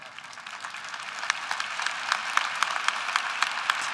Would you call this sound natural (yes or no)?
yes